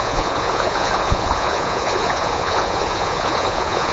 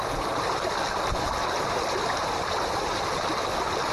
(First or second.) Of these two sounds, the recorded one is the second